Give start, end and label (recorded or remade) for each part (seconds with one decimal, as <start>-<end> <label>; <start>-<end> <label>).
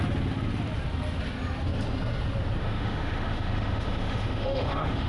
0.0-2.6 recorded; 2.6-5.1 remade